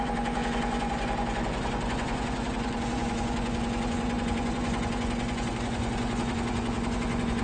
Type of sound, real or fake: fake